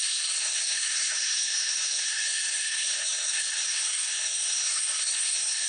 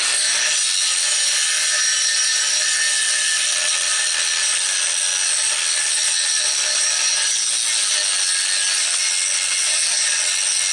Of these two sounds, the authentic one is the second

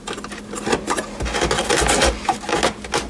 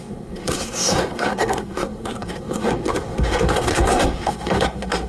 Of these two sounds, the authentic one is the first